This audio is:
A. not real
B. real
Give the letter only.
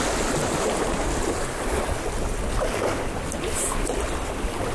B